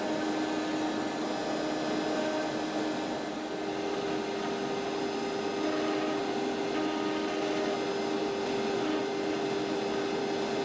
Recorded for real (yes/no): yes